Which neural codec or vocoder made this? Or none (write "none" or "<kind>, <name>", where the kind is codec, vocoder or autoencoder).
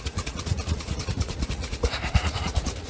vocoder, Vocos